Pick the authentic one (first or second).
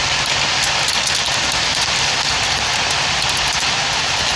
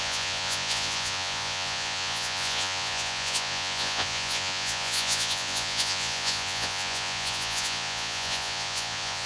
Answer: first